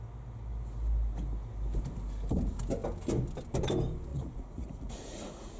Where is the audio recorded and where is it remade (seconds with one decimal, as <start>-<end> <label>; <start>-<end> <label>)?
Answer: 0.0-4.1 recorded; 4.1-5.6 remade